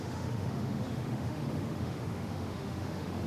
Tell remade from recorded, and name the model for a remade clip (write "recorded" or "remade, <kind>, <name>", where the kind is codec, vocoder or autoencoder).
remade, autoencoder, DAC-VAE